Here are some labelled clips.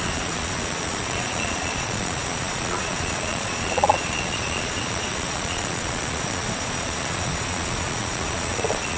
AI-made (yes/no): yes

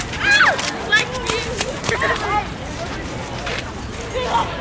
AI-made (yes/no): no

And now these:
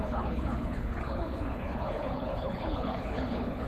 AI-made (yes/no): yes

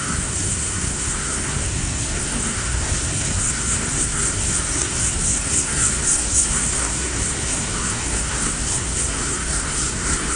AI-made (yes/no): yes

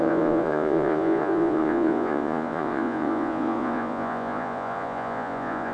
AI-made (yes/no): yes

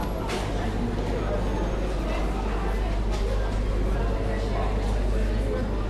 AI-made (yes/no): no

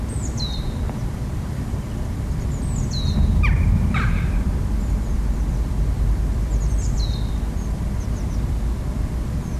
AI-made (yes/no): yes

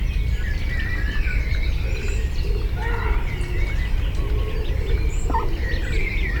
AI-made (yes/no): no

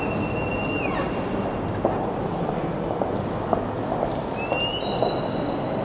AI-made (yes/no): no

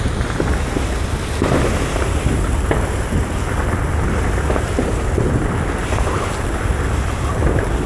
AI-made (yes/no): no